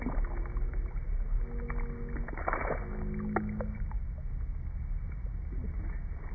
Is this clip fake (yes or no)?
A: no